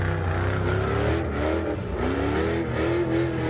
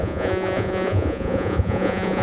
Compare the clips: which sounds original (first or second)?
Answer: first